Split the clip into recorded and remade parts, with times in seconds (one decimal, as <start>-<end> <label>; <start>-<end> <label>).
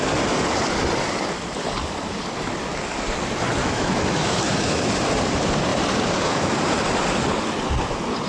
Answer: 0.0-3.6 recorded; 3.6-4.9 remade; 4.9-8.3 recorded